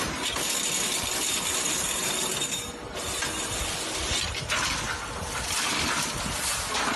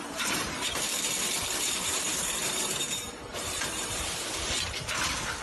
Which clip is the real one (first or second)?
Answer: first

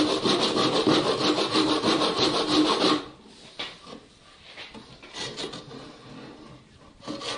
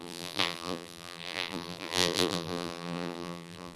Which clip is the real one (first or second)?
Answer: first